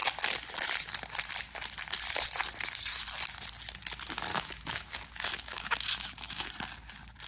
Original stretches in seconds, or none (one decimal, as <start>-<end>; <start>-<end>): 0.0-4.3; 6.5-7.3